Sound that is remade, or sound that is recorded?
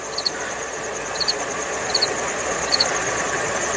remade